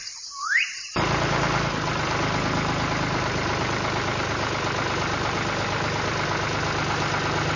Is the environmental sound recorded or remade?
recorded